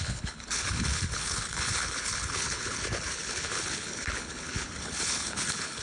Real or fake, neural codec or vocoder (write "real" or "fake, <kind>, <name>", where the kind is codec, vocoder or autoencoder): fake, codec, HILCodec